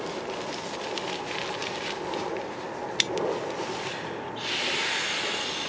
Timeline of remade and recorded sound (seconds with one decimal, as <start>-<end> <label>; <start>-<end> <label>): 0.0-5.7 recorded